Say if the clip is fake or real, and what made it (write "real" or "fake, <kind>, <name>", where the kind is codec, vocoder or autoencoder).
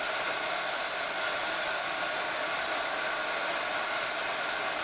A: real